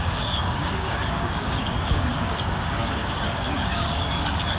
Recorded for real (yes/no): no